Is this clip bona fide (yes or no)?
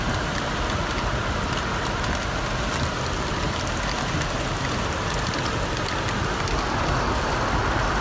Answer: yes